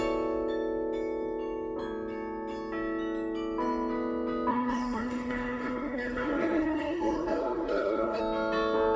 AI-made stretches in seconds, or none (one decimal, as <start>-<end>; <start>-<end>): 4.5-8.2